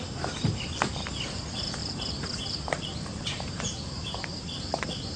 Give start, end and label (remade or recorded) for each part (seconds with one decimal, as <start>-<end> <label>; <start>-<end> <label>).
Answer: 0.0-1.8 recorded; 1.8-5.2 remade